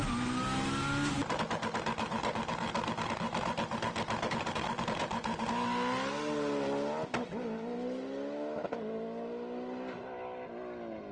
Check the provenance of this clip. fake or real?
real